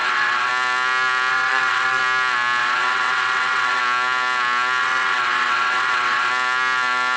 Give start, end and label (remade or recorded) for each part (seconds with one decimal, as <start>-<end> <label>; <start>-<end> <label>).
0.0-0.5 remade; 0.5-1.3 recorded; 1.3-2.0 remade; 2.0-2.6 recorded; 2.6-3.8 remade; 3.8-4.8 recorded; 4.8-6.3 remade; 6.3-7.2 recorded

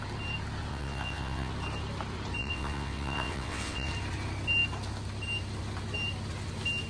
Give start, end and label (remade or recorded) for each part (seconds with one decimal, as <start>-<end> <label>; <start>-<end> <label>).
0.0-0.7 recorded; 0.7-1.5 remade; 1.5-2.4 recorded; 2.4-3.9 remade; 3.9-6.9 recorded

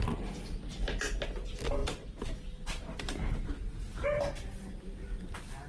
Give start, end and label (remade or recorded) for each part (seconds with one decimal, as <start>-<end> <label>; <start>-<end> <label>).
0.0-5.7 recorded

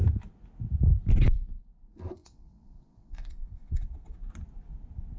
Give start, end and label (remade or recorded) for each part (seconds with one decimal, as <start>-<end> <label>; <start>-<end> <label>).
0.0-2.2 recorded; 2.2-4.3 remade; 4.3-5.2 recorded

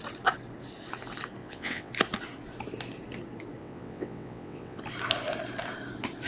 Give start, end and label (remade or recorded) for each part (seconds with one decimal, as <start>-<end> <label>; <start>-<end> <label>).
0.0-1.4 recorded; 1.4-1.9 remade; 1.9-3.6 recorded; 3.6-4.8 remade; 4.8-6.3 recorded

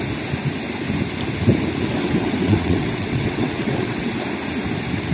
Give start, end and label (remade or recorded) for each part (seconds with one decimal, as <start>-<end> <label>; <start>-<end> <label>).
0.0-2.0 recorded; 2.0-4.2 remade; 4.2-5.1 recorded